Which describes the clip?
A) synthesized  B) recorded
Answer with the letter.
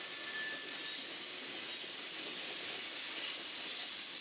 B